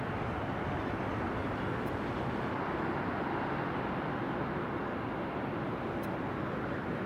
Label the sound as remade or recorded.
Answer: recorded